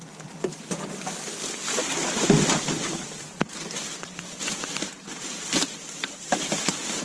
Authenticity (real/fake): fake